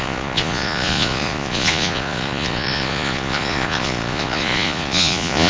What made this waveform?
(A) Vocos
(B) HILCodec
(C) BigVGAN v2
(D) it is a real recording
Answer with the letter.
A